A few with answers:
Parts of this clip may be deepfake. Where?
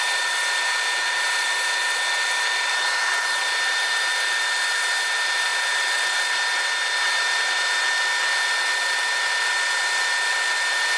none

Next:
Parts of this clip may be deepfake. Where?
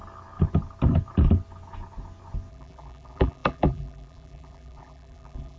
2.5-5.6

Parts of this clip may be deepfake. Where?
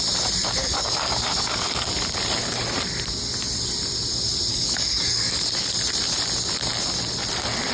0.6-1.9; 4.5-5.7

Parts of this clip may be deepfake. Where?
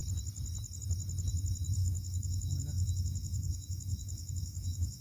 1.8-5.0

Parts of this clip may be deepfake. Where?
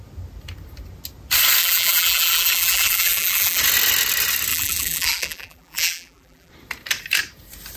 1.6-3.6; 4.5-6.5